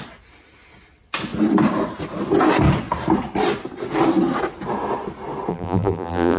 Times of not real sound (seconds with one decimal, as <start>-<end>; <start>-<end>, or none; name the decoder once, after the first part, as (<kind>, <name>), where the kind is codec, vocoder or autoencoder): 5.5-6.4 (vocoder, BigVGAN v2)

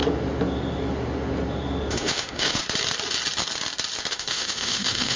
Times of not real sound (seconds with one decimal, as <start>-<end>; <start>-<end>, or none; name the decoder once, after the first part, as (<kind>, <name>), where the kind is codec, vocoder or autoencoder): 1.9-2.6 (autoencoder, DAC-VAE); 4.1-5.2

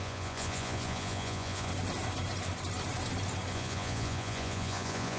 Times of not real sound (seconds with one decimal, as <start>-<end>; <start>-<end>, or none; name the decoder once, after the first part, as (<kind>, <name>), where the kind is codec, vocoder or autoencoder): 0.0-1.7 (vocoder, Vocos); 3.5-5.2

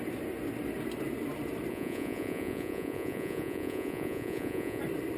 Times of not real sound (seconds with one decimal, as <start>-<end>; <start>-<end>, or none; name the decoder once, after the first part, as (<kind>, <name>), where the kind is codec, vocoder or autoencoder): 1.7-4.8 (vocoder, Vocos)

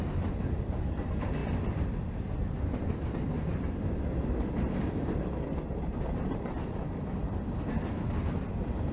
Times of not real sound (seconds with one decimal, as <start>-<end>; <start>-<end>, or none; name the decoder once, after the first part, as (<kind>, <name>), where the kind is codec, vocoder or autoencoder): none

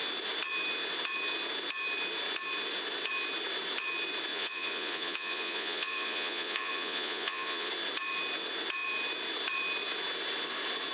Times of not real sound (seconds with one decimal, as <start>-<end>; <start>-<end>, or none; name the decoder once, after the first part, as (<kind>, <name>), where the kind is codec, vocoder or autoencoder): 4.3-7.7 (vocoder, Vocos)

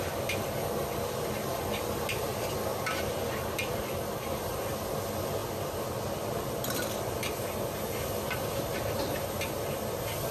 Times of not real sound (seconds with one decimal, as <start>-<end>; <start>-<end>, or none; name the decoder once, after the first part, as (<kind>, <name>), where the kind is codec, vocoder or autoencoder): none

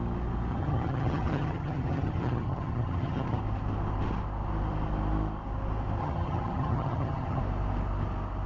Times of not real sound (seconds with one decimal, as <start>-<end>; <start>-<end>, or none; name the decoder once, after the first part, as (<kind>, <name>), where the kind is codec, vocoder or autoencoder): 0.5-3.4 (vocoder, HiFi-GAN); 6.0-7.4